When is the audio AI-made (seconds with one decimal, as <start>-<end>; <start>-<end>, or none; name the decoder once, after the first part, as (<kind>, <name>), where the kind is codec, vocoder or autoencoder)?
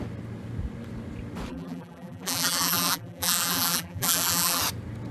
1.5-4.6 (vocoder, BigVGAN v2)